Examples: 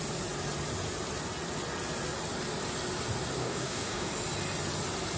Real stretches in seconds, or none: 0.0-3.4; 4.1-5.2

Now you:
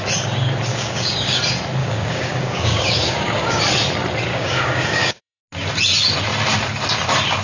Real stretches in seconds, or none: 0.0-0.7; 1.4-1.8; 3.6-4.3; 5.4-7.4

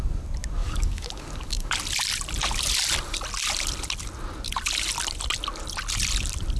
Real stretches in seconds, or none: 0.0-0.6; 1.7-6.6